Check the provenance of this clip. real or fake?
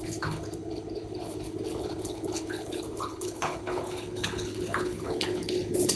fake